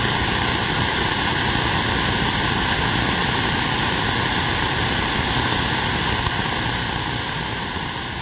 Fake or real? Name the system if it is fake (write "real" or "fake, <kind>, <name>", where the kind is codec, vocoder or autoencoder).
real